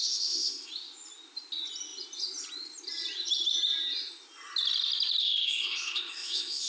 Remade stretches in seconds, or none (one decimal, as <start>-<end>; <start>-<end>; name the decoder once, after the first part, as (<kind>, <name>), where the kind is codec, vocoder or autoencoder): 0.0-0.7 (codec, ZipCodec); 5.2-6.7